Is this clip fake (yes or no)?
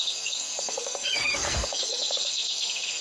yes